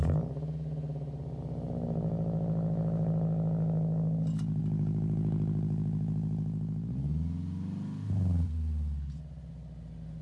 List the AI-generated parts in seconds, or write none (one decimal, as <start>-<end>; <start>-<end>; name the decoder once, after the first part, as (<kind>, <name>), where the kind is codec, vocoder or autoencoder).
none

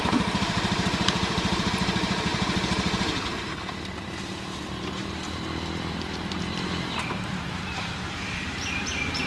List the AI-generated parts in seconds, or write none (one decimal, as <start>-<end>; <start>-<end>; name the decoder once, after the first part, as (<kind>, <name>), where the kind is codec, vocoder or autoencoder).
0.0-9.3 (vocoder, BigVGAN v2)

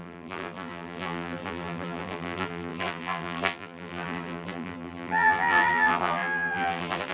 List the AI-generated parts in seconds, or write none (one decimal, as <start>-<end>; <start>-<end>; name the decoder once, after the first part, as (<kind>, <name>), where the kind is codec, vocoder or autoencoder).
0.0-7.1 (vocoder, BigVGAN v2)

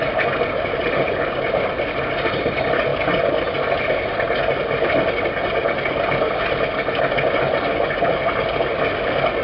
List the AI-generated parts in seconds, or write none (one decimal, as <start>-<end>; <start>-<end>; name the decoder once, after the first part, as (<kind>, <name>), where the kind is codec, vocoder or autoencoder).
none

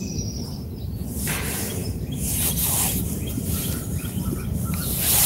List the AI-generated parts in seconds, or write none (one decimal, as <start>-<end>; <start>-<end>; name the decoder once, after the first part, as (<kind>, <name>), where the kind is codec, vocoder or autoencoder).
0.0-5.3 (vocoder, BigVGAN v2)

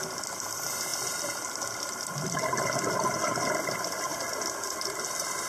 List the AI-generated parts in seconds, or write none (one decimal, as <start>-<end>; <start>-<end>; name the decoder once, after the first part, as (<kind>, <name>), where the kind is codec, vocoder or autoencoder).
none

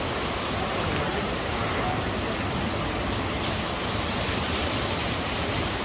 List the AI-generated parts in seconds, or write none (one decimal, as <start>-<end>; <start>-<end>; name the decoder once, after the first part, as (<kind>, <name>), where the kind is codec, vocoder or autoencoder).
1.1-1.6 (vocoder, BigVGAN v2); 5.0-5.8